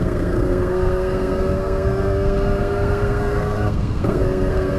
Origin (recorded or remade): remade